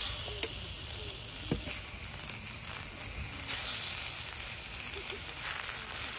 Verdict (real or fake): real